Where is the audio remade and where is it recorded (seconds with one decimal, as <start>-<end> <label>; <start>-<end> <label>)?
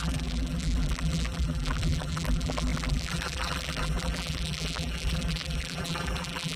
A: 0.0-6.6 remade